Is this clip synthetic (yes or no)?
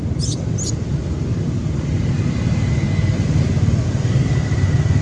no